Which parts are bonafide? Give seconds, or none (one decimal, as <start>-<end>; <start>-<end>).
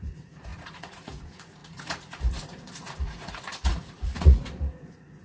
none